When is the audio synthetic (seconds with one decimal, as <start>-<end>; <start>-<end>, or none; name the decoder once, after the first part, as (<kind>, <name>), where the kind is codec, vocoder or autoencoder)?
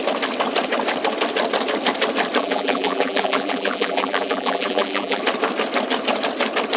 2.4-5.2 (vocoder, BigVGAN v2)